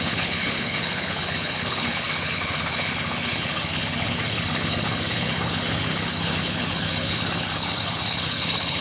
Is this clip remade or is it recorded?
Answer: remade